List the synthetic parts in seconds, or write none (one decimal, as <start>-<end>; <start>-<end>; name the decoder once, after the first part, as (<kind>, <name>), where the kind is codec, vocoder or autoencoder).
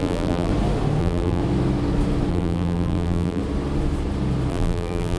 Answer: 0.0-0.5 (vocoder, BigVGAN v2); 1.0-1.4; 2.3-3.4; 4.5-5.2